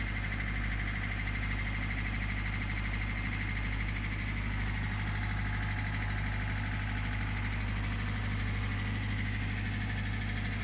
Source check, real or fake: real